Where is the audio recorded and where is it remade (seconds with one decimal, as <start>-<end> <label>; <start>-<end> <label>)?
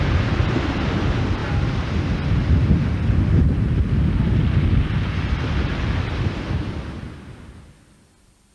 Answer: 0.0-8.5 recorded